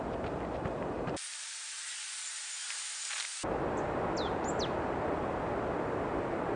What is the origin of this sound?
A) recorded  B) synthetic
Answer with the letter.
A